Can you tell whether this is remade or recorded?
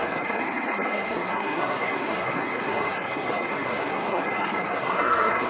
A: remade